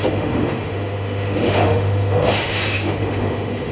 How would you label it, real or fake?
fake